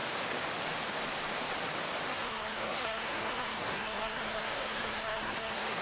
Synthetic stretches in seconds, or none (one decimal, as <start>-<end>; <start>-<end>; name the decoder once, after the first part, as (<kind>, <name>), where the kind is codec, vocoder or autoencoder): 2.1-5.8 (codec, SNAC)